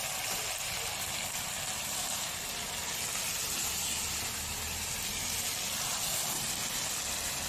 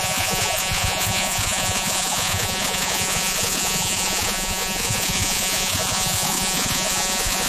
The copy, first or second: second